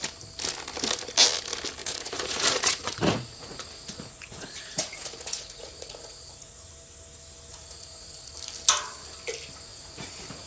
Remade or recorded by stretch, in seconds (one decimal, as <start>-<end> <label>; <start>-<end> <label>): 0.0-1.8 recorded; 1.8-6.7 remade; 6.7-7.5 recorded; 7.5-8.3 remade; 8.3-9.7 recorded; 9.7-10.5 remade